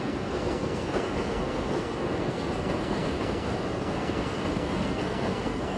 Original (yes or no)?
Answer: no